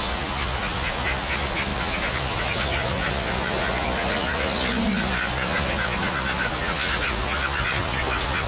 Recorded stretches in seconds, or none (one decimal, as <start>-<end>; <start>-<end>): none